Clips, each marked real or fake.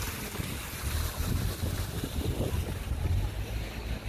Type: real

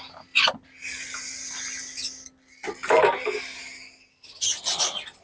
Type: real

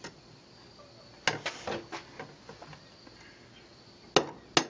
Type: real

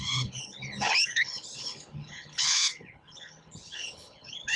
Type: fake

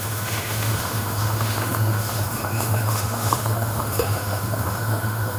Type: fake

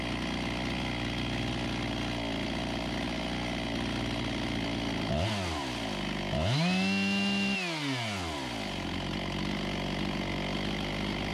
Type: real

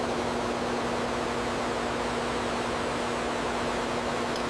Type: real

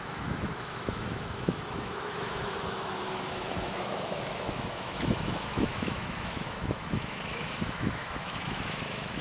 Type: fake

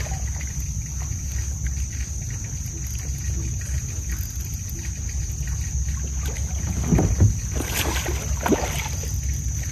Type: real